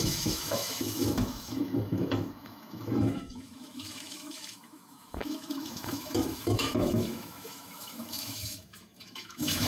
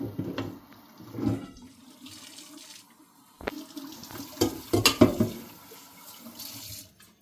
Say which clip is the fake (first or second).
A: first